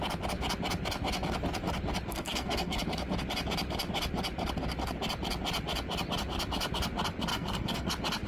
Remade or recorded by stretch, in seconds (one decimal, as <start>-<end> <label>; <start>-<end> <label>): 0.0-2.1 recorded; 2.1-2.8 remade; 2.8-7.3 recorded; 7.3-7.9 remade; 7.9-8.3 recorded